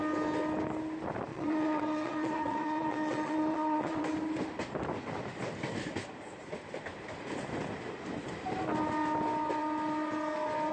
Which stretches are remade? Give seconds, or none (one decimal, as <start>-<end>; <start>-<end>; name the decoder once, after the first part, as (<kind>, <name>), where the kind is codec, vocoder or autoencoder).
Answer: 1.3-4.0 (vocoder, Vocos)